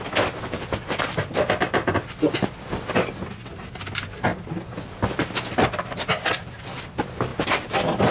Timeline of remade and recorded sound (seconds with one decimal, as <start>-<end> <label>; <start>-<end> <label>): 0.0-8.1 recorded